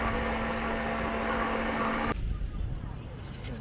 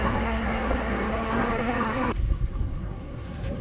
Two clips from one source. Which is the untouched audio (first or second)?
first